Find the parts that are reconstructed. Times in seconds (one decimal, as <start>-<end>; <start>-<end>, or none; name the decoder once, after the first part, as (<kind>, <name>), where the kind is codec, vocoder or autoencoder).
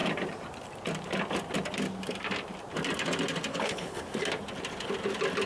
3.5-4.0 (codec, HILCodec)